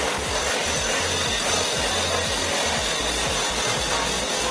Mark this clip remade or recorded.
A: recorded